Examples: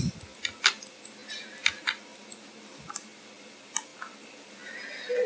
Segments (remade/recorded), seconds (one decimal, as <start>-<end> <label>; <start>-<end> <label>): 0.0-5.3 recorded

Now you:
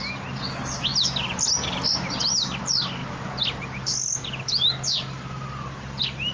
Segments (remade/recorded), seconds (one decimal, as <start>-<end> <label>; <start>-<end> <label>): 0.0-6.3 recorded

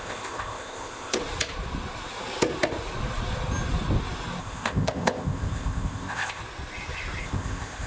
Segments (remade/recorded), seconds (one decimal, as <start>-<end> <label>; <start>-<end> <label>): 0.0-1.2 remade; 1.2-4.4 recorded; 4.4-6.4 remade; 6.4-7.2 recorded; 7.2-7.9 remade

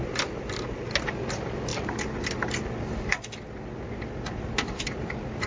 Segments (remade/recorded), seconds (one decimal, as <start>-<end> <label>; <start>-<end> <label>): 0.0-5.5 recorded

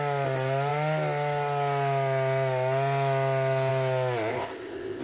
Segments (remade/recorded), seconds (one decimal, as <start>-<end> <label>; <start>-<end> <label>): 0.0-4.3 recorded; 4.3-5.0 remade

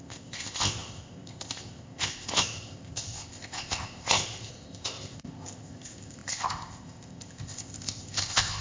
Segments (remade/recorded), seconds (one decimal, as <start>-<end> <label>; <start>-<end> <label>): 0.0-8.6 remade

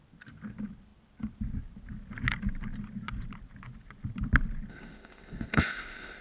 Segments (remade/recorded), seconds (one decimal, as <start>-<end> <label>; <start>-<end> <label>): 0.0-4.7 recorded; 4.7-6.2 remade

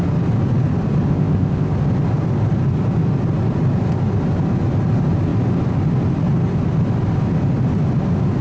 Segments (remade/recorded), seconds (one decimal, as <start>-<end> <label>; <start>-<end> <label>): 0.0-1.1 recorded; 1.1-1.7 remade; 1.7-8.4 recorded